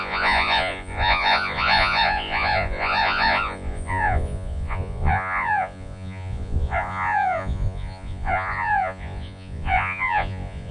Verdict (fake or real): fake